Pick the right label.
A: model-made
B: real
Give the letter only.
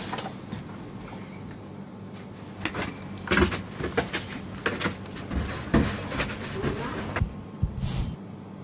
B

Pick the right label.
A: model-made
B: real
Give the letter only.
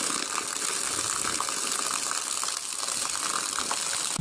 B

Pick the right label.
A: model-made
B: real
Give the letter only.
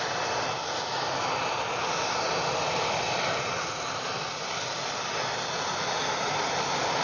B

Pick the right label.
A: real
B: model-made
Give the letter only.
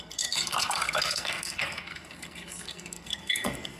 B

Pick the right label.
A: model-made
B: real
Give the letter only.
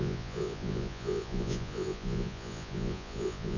A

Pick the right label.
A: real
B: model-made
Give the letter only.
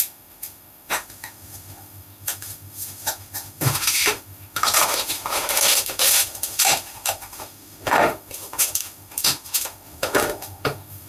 B